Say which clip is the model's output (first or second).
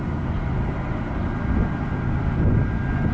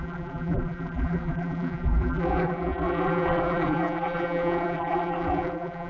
second